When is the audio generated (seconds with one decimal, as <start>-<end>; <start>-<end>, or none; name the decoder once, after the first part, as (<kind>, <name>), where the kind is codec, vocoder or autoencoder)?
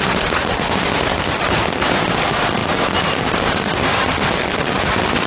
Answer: none